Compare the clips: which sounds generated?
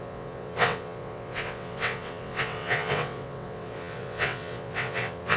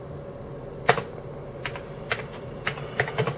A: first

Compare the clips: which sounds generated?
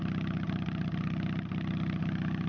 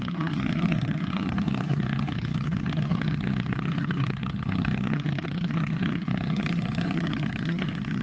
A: second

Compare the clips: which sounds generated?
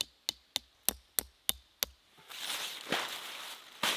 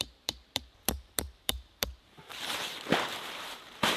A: second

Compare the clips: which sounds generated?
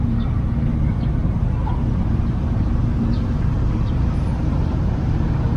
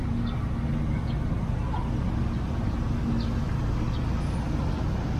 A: first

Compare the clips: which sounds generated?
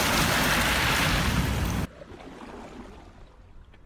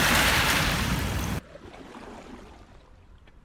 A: second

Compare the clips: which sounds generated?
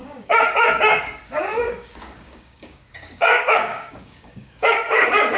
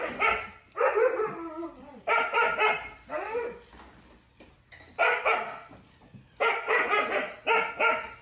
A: first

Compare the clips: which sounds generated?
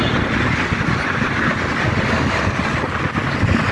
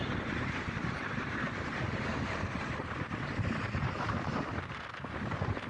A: second